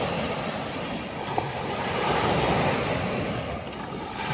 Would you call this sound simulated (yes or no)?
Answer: no